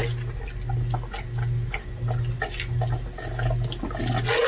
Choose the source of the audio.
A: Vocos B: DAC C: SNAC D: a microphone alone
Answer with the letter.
D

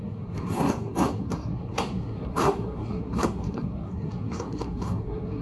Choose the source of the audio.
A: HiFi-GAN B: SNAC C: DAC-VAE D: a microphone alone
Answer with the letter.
B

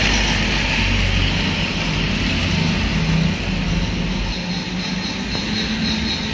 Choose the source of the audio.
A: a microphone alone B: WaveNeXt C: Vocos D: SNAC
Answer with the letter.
A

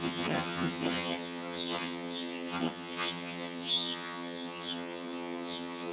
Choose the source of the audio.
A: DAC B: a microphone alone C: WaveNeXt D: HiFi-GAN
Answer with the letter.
D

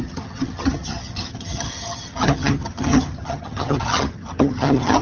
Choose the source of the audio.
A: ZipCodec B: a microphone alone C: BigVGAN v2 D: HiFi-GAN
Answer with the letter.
D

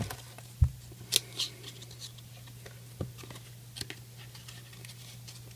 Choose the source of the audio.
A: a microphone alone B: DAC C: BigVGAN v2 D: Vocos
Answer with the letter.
A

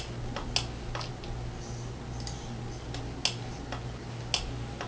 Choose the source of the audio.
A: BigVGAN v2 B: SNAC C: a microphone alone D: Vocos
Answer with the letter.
C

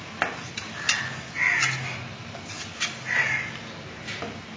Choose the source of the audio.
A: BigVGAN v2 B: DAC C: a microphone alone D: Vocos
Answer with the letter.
C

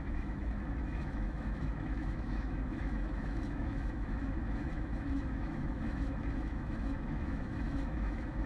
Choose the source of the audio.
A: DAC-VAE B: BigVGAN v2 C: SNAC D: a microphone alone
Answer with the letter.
A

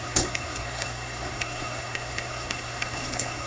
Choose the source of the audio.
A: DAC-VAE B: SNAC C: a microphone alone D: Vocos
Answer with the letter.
B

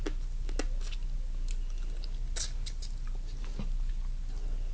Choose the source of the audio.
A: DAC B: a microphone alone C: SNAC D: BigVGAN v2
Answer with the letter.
B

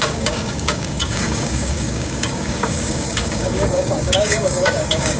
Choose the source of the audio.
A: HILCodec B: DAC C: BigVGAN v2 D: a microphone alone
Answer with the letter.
B